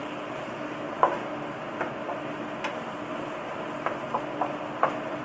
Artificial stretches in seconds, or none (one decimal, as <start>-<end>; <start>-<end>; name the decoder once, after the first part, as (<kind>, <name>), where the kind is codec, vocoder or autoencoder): none